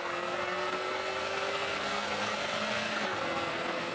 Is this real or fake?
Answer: fake